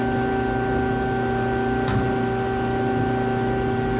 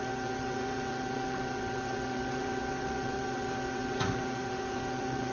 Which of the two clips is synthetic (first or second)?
second